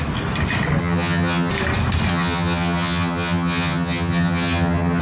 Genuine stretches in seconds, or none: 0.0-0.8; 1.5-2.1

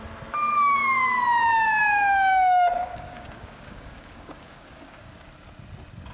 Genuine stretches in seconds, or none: 0.0-1.5; 5.2-6.1

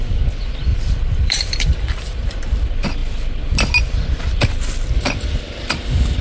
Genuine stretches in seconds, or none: 0.0-0.7; 2.4-6.2

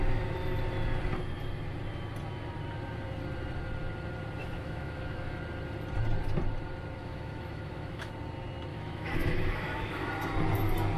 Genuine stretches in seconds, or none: 0.0-4.4; 5.4-7.0; 8.1-8.7; 10.1-11.0

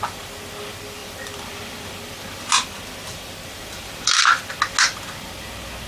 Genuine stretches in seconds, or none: 0.0-1.0; 4.5-5.9